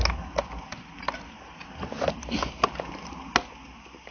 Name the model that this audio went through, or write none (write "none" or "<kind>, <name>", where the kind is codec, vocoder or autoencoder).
none